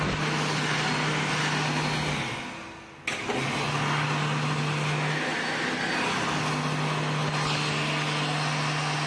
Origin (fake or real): real